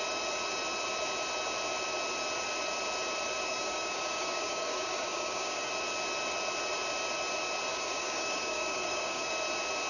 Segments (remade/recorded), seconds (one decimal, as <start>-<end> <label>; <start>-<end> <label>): 0.0-3.5 recorded; 3.5-5.7 remade; 5.7-7.7 recorded; 7.7-9.3 remade; 9.3-9.9 recorded